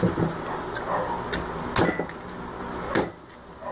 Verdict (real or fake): real